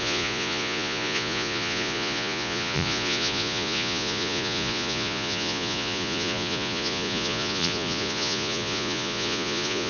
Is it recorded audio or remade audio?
remade